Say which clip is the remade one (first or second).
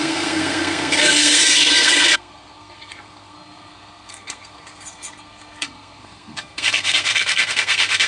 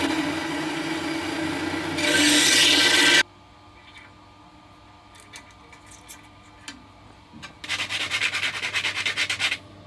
first